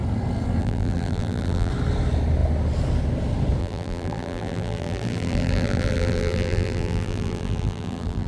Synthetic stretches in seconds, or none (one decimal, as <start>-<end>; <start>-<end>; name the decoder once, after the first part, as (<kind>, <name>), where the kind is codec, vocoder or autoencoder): 0.6-1.7 (vocoder, BigVGAN v2); 3.6-8.3